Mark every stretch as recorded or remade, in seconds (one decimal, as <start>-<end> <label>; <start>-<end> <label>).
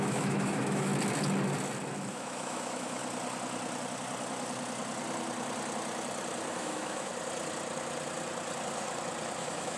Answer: 0.0-0.9 remade; 0.9-2.1 recorded; 2.1-3.0 remade; 3.0-6.5 recorded; 6.5-7.1 remade; 7.1-9.4 recorded; 9.4-9.8 remade